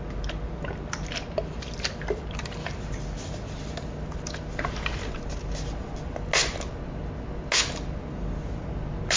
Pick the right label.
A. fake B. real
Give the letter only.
B